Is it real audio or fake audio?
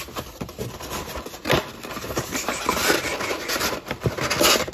real